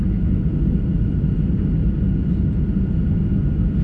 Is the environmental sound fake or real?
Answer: real